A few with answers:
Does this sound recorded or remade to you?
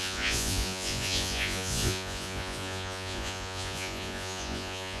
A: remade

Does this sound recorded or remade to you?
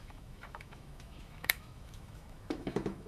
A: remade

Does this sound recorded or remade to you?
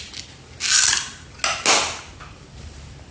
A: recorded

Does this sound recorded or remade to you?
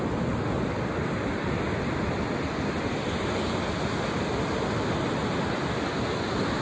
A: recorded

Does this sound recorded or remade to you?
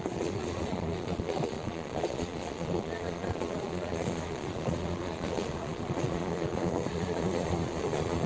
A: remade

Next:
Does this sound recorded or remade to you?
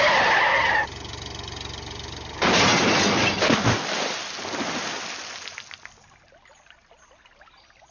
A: recorded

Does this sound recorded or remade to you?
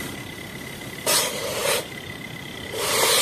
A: remade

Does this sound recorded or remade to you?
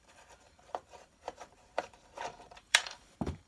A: remade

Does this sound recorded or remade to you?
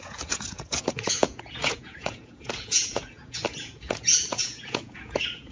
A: remade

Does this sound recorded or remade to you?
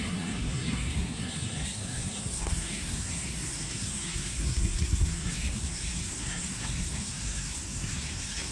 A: remade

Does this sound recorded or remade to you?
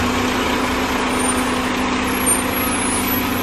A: recorded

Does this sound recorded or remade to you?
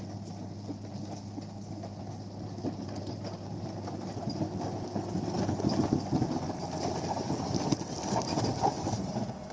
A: recorded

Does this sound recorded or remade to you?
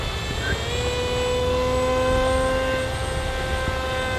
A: recorded